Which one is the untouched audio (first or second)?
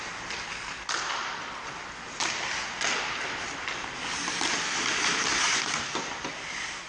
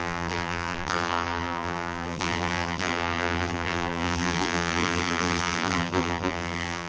first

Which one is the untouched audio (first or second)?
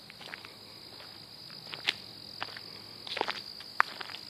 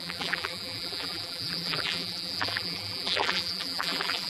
first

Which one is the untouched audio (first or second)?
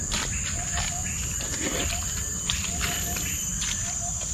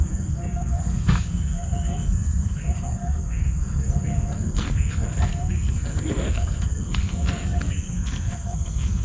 first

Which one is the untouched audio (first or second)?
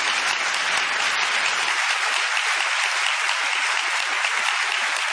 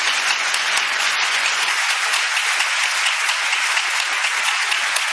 first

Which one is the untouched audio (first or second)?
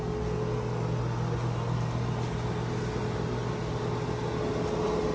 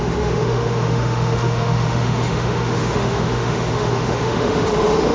first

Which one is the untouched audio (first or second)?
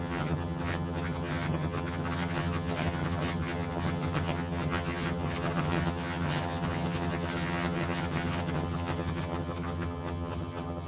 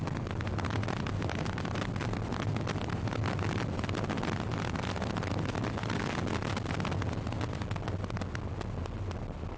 second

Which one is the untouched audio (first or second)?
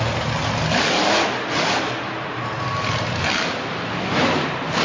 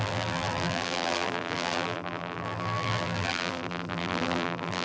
first